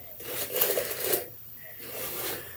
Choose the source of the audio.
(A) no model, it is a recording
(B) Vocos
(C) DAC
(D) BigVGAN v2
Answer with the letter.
D